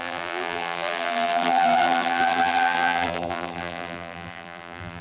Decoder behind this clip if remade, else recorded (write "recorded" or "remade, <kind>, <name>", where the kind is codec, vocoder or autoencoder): remade, vocoder, BigVGAN v2